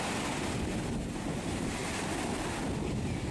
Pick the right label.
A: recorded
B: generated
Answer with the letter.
B